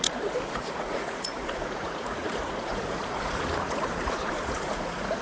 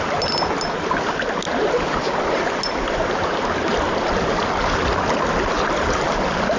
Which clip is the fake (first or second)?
first